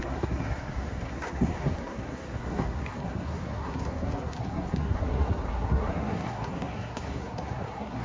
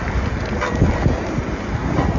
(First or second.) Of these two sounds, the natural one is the second